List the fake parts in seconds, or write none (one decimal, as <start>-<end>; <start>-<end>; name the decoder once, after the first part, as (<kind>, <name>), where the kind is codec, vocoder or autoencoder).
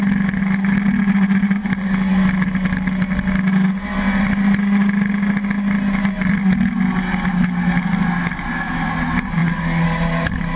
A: none